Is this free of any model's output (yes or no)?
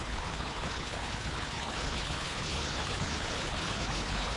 no